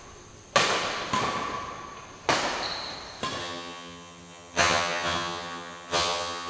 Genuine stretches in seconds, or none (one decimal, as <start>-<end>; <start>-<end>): 0.0-3.4